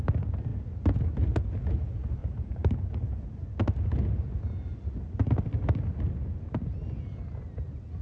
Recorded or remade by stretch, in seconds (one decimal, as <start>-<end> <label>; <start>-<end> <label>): 0.0-2.2 recorded; 2.2-3.2 remade; 3.2-8.0 recorded